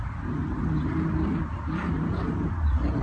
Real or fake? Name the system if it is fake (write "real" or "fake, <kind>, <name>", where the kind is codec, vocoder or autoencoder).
real